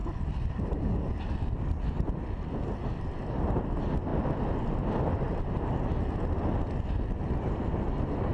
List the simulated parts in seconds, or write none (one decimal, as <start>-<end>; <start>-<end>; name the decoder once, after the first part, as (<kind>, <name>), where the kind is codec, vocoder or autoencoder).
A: none